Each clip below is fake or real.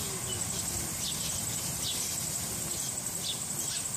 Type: real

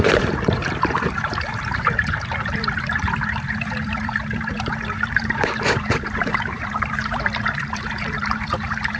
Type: fake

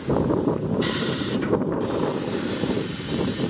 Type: fake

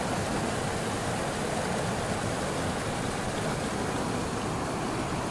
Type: real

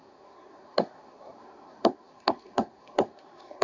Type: fake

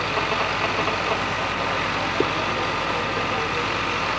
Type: real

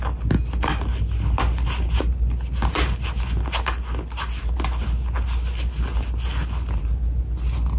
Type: real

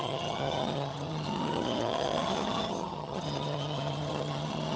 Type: fake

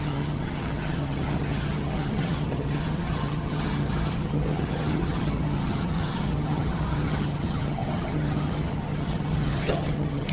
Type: fake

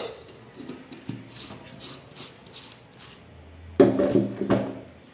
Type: real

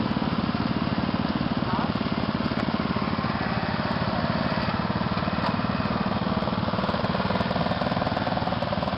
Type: real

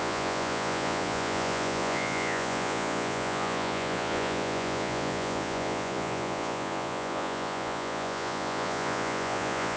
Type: fake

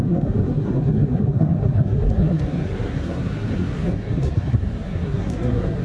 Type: fake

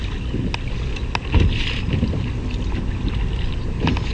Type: real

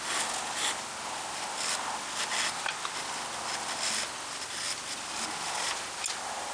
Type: real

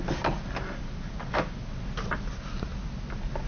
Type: real